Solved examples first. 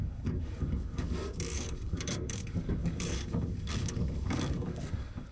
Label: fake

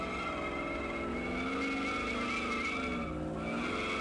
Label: real